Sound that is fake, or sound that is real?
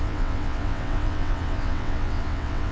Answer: fake